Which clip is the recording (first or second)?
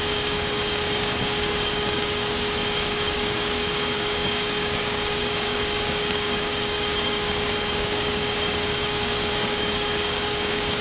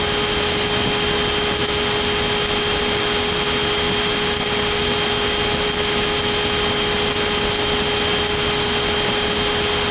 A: second